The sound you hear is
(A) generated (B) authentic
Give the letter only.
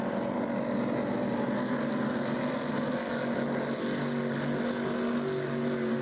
B